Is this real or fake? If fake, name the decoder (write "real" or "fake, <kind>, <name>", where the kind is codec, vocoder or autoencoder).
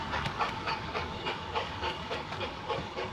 fake, codec, DAC